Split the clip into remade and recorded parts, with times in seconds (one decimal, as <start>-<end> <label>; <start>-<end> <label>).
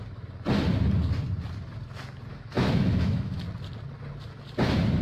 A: 0.0-2.3 recorded; 2.3-3.4 remade; 3.4-5.0 recorded